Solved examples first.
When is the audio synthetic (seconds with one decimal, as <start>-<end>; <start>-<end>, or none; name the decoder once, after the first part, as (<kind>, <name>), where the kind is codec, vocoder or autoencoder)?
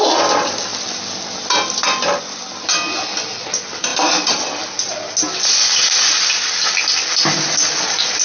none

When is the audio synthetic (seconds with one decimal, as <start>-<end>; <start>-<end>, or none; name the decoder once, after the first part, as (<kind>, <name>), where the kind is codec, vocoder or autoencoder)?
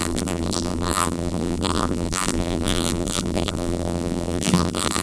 0.0-5.0 (vocoder, BigVGAN v2)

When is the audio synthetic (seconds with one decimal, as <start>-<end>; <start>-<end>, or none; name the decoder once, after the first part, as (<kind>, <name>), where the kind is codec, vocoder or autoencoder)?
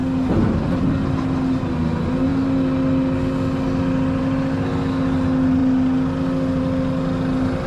none